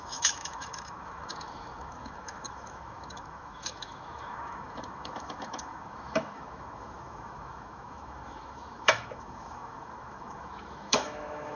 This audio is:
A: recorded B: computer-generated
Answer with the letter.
B